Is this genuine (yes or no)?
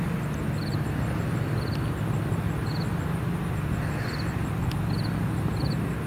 yes